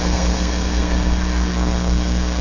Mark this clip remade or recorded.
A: remade